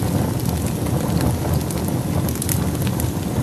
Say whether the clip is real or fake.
real